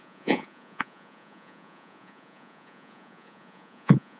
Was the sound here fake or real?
fake